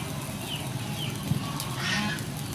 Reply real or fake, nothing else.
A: real